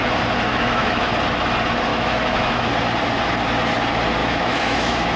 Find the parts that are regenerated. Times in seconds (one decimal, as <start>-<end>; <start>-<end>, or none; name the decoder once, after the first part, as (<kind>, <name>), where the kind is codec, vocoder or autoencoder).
0.5-1.1 (autoencoder, DAC-VAE); 1.9-2.7; 4.2-5.2